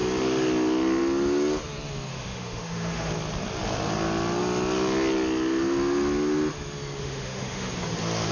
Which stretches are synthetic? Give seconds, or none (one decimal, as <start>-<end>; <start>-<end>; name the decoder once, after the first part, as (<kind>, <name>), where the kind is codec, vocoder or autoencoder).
2.1-3.1 (autoencoder, DAC-VAE); 7.0-7.7